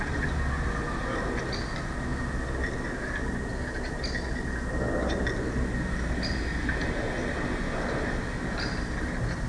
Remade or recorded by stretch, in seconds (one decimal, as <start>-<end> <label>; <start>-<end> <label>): 0.0-9.5 recorded